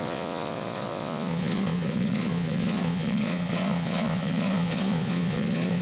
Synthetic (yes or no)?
yes